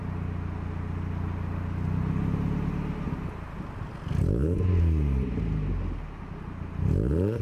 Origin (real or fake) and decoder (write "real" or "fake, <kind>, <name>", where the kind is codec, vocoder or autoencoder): real